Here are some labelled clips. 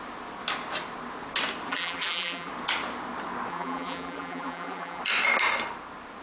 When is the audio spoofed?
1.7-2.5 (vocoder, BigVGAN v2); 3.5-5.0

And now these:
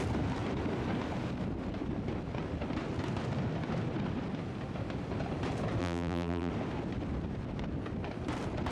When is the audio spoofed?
5.8-6.5 (vocoder, BigVGAN v2)

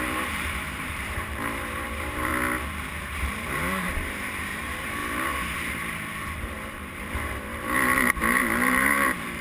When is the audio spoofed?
0.0-2.3 (vocoder, BigVGAN v2); 3.1-5.0; 6.2-9.4

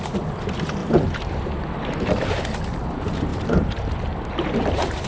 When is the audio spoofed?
0.8-2.4 (vocoder, BigVGAN v2); 3.3-5.1